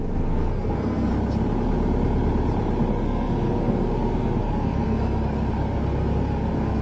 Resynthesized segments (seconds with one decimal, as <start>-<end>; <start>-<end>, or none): 0.0-1.1; 2.9-6.8